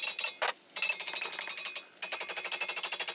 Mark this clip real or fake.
real